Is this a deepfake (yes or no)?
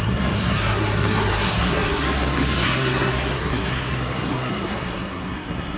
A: yes